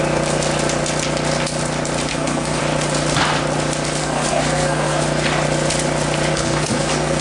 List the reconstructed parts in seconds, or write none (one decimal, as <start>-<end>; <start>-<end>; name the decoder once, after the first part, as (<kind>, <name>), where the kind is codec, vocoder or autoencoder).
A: 2.1-2.6 (codec, SNAC); 4.0-5.0; 6.3-7.2